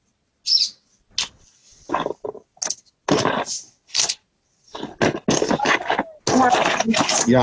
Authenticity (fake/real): real